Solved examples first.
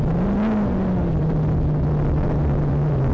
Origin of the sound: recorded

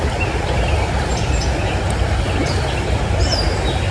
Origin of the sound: recorded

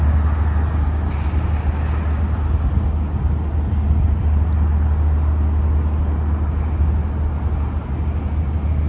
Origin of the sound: recorded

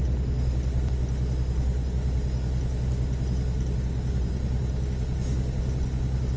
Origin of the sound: recorded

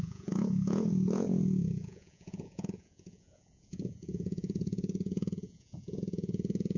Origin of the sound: remade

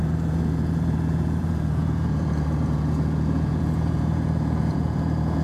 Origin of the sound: remade